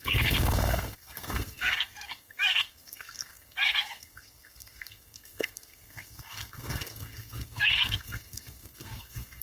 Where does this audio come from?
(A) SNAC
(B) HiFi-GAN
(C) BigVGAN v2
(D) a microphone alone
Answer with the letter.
A